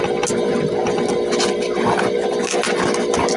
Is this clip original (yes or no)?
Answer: yes